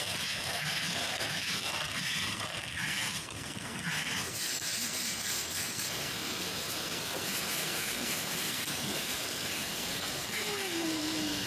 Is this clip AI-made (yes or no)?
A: yes